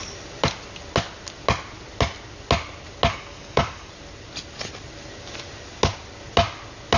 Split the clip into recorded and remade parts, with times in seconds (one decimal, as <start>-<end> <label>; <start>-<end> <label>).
0.0-3.1 recorded; 3.1-3.9 remade; 3.9-7.0 recorded